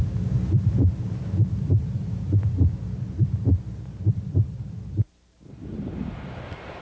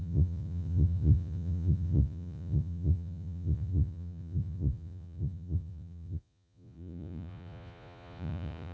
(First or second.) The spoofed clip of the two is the second